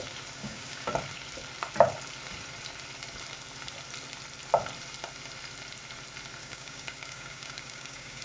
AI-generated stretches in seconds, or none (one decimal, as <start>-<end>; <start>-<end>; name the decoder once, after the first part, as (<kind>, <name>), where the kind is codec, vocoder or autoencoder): 0.4-0.9 (codec, DAC); 6.4-8.2